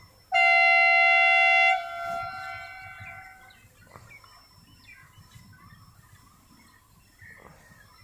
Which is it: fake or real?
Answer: real